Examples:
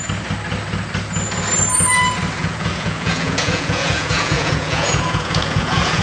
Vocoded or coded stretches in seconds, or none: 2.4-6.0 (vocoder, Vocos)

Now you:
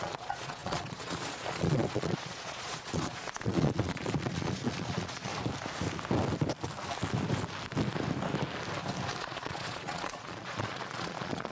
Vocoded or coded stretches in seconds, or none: 0.0-5.3 (vocoder, Vocos); 9.2-11.5

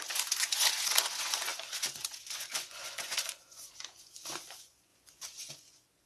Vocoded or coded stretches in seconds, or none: 0.0-6.1 (vocoder, Vocos)

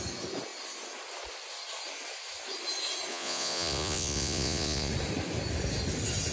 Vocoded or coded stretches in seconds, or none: 3.1-4.9 (vocoder, Vocos)

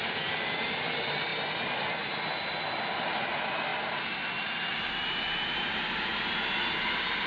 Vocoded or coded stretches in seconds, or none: none

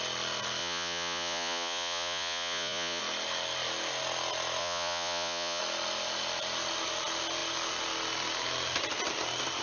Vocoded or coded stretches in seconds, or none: 0.6-3.0 (vocoder, Vocos); 4.6-5.6

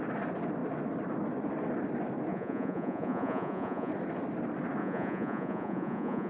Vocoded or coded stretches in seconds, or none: 2.3-3.9 (vocoder, Vocos); 4.8-6.3